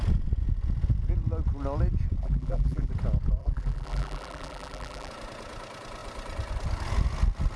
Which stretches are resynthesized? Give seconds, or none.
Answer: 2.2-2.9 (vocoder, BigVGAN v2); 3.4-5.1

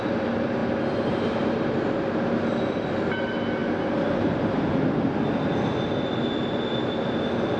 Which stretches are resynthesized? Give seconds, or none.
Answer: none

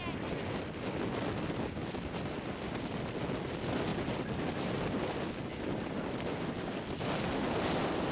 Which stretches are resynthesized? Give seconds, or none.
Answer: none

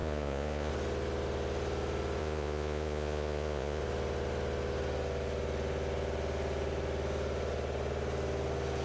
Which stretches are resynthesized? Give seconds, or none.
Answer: 0.0-0.7 (vocoder, Vocos); 2.2-3.8